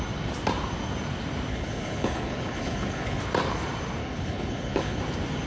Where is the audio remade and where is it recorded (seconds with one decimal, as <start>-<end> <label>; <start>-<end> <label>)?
0.0-1.5 recorded; 1.5-3.2 remade; 3.2-4.0 recorded; 4.0-5.0 remade; 5.0-5.5 recorded